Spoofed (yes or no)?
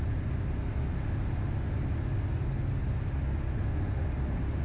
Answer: no